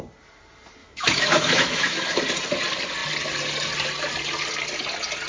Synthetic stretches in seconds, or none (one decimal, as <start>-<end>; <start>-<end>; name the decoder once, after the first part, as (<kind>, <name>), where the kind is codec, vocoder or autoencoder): 0.8-2.2 (autoencoder, DAC-VAE)